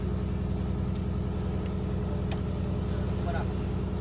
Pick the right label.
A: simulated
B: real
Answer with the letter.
B